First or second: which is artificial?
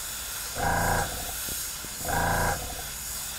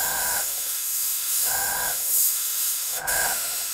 second